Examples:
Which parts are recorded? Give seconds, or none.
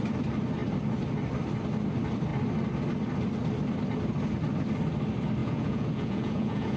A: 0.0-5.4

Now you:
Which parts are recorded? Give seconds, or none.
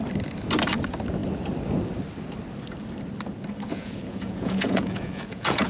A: 0.0-3.7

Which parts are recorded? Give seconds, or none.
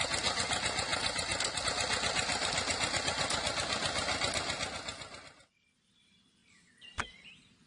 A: 0.0-7.7